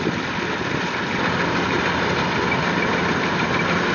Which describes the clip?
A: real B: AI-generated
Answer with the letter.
A